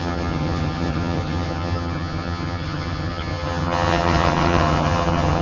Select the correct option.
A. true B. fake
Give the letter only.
B